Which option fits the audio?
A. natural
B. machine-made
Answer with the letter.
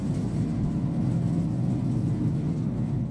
A